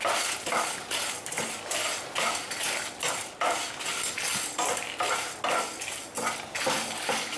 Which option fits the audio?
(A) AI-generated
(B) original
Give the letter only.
B